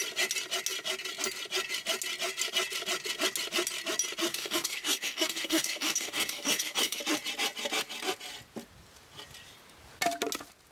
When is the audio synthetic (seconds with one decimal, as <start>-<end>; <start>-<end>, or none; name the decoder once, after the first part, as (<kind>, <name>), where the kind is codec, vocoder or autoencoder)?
4.3-7.0 (codec, DAC)